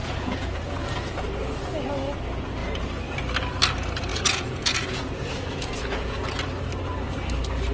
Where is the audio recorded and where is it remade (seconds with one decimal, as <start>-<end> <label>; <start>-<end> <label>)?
0.0-0.7 remade; 0.7-4.1 recorded; 4.1-6.4 remade; 6.4-7.7 recorded